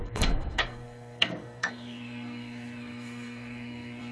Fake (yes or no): yes